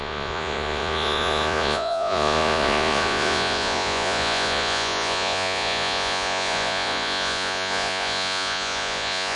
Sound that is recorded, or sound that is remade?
remade